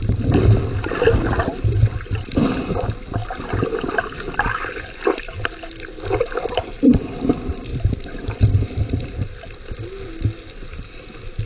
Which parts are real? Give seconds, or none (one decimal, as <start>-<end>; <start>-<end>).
0.0-7.7; 9.8-11.5